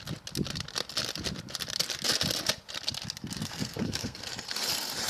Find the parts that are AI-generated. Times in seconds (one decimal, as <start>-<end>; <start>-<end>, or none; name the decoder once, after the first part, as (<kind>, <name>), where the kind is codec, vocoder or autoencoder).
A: 3.4-4.2 (codec, SNAC)